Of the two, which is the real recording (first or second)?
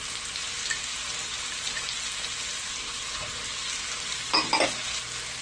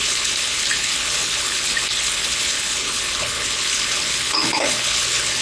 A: first